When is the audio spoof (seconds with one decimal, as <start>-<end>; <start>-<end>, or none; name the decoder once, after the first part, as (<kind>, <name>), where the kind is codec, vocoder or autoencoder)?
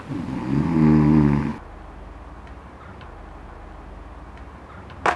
none